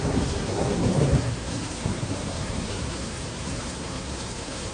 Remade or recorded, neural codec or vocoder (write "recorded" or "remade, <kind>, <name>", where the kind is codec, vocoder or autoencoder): remade, codec, SNAC